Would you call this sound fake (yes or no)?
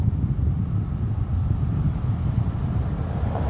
no